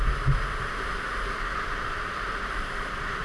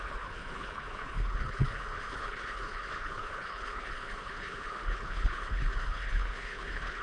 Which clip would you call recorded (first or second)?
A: first